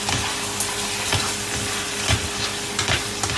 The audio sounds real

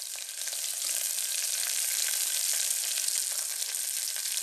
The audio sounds real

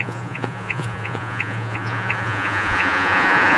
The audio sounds fake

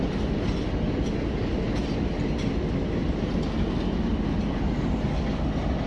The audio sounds real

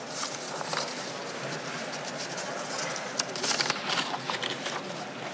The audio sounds real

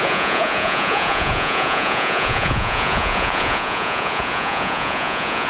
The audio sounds fake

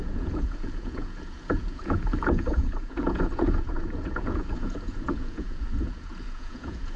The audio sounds fake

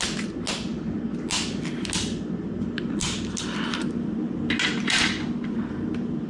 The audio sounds real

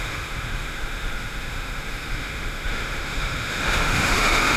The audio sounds fake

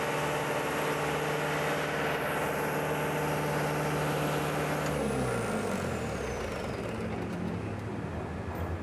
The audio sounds real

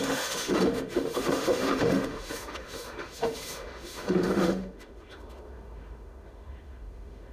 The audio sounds fake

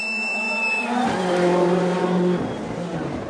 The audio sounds real